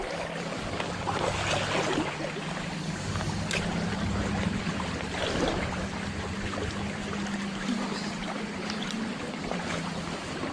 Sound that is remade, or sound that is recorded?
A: recorded